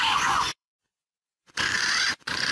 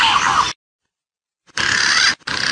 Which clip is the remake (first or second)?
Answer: first